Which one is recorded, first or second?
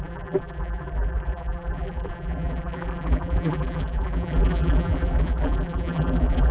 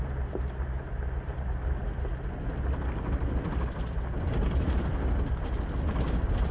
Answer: second